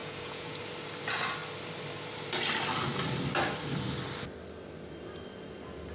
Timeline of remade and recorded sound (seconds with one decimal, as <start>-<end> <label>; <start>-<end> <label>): 0.0-0.6 remade; 0.6-5.9 recorded